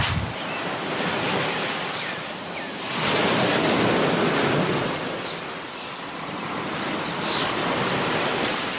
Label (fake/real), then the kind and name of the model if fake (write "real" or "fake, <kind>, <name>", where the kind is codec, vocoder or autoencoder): fake, vocoder, BigVGAN v2